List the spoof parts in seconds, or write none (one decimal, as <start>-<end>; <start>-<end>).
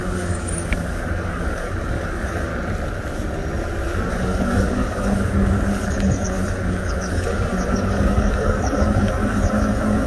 0.0-2.5; 4.1-10.1